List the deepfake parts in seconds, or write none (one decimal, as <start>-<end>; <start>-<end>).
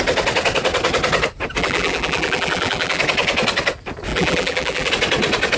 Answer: 1.6-3.0; 4.1-4.9